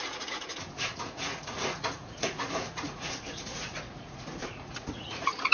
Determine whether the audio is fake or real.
fake